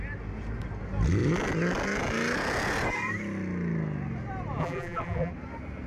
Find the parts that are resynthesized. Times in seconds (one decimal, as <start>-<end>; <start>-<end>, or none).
4.6-5.3